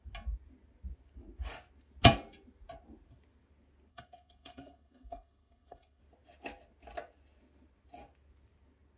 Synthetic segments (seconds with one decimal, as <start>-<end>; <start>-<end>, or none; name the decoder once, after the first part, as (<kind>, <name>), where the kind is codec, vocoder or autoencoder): 3.9-6.0 (codec, SNAC)